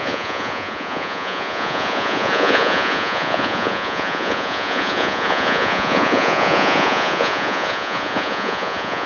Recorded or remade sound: remade